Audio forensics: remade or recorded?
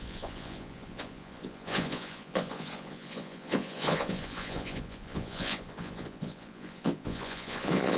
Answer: remade